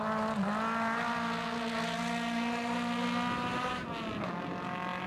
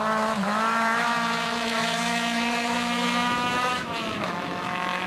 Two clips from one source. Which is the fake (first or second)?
second